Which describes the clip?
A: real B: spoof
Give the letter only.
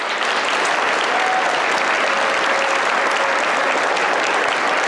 A